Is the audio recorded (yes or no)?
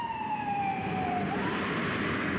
no